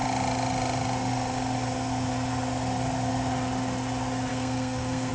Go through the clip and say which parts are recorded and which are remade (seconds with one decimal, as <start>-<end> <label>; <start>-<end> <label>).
0.0-4.3 recorded; 4.3-5.1 remade